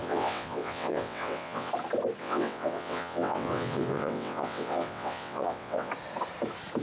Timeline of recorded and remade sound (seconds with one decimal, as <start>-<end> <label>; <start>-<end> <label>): 0.0-1.7 remade; 1.7-2.2 recorded; 2.2-5.9 remade; 5.9-6.8 recorded